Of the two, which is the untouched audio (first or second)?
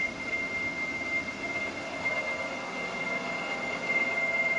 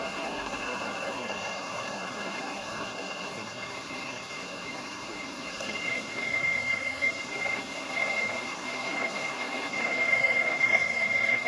first